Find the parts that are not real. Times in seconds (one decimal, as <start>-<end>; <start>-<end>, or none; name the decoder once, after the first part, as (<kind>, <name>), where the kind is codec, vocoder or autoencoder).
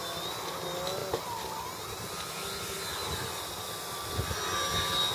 none